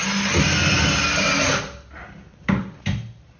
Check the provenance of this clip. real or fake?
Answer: real